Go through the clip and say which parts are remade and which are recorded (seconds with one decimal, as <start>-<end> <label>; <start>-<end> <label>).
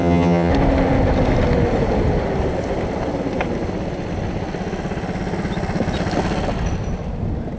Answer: 0.0-0.5 remade; 0.5-7.6 recorded